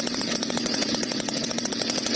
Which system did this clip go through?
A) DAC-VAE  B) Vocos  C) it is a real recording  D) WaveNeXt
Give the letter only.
D